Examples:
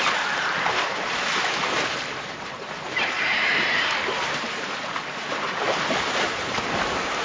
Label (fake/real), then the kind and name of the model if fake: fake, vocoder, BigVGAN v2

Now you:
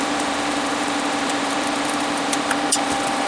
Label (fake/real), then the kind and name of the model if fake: fake, vocoder, BigVGAN v2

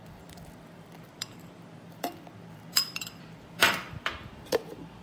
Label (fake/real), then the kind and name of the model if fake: fake, vocoder, BigVGAN v2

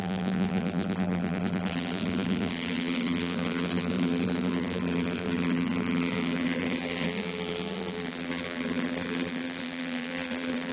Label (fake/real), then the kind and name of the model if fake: fake, vocoder, BigVGAN v2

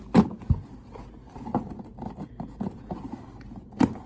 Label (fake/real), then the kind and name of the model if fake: real